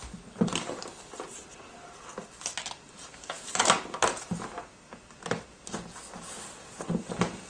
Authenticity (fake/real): real